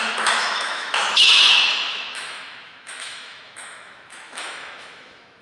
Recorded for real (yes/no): no